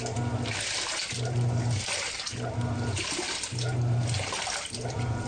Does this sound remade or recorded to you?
recorded